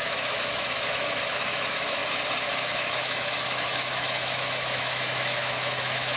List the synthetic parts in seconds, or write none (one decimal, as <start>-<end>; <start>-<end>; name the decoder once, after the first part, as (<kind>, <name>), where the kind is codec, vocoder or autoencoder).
0.0-2.0 (autoencoder, DAC-VAE); 2.5-6.2